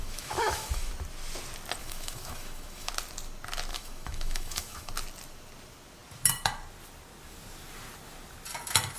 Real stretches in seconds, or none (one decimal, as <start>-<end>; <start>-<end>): 0.9-1.8; 2.9-3.7; 4.9-9.0